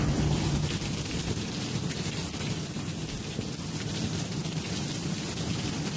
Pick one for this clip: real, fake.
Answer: real